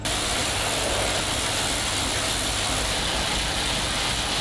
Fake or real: real